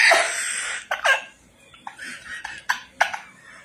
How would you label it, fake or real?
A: real